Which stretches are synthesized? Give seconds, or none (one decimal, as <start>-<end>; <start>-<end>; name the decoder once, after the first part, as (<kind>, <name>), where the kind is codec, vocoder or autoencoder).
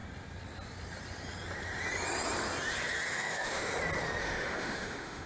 3.1-3.7 (autoencoder, DAC-VAE); 4.2-5.3